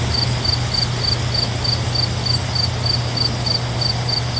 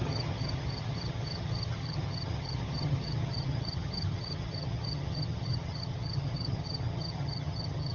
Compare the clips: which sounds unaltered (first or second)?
first